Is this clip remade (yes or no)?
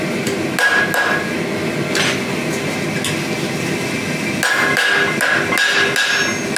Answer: no